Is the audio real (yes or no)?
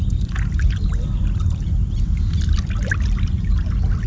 yes